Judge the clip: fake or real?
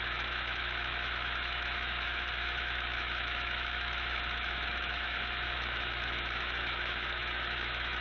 fake